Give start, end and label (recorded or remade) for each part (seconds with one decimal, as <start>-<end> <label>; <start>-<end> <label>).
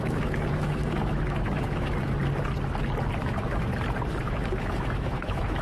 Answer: 0.0-2.2 remade; 2.2-3.2 recorded; 3.2-3.7 remade; 3.7-4.2 recorded; 4.2-5.6 remade